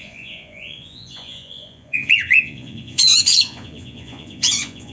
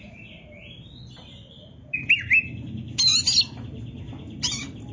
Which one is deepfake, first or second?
first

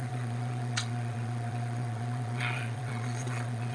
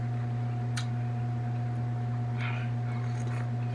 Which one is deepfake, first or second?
first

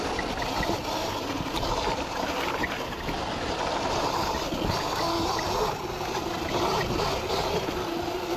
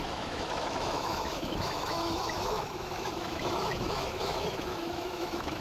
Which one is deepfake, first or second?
second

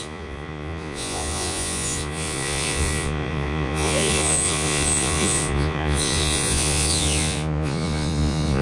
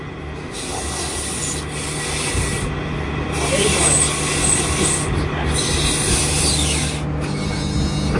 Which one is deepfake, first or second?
first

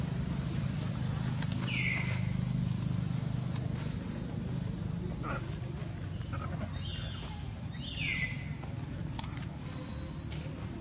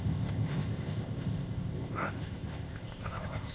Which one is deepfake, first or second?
second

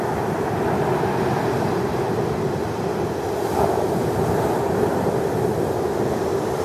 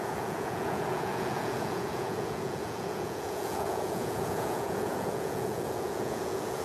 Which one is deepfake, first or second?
second